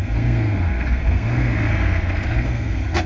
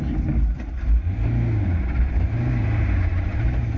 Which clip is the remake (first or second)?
first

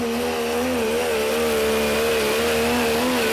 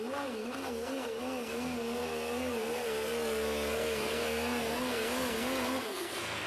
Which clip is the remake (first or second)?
second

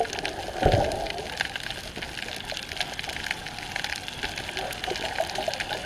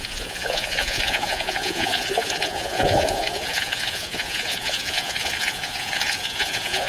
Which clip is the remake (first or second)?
second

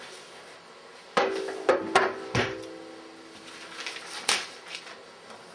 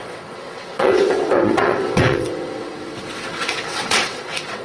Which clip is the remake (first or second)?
second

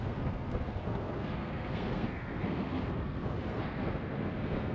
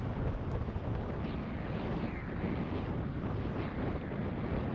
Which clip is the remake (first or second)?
first